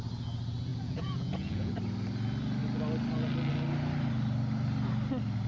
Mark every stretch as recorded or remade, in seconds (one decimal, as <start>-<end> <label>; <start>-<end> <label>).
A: 0.0-0.7 recorded; 0.7-1.7 remade; 1.7-5.5 recorded